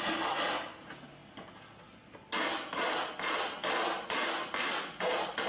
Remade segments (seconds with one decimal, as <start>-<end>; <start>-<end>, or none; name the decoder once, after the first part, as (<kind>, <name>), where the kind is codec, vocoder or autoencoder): none